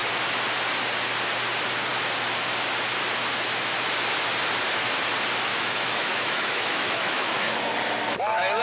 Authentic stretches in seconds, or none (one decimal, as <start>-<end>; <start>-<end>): 0.0-5.5; 7.5-8.6